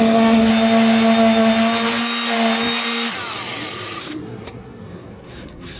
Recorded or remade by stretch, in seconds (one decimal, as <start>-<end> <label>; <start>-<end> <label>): 0.0-0.5 remade; 0.5-4.0 recorded; 4.0-5.8 remade